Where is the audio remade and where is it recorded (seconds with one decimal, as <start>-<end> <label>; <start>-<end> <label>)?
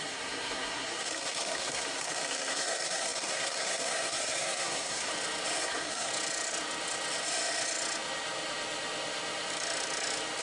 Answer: 0.0-5.1 remade; 5.1-5.6 recorded; 5.6-6.1 remade; 6.1-10.4 recorded